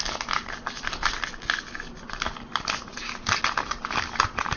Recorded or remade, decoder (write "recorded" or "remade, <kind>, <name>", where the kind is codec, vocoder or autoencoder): recorded